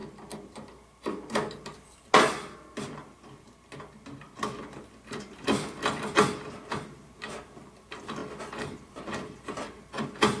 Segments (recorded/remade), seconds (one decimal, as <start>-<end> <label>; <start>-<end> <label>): 0.0-10.4 recorded